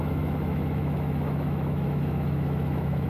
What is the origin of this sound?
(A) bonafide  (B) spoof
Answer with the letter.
B